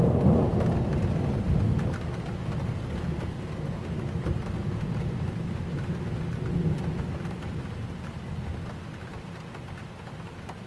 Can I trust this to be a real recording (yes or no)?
yes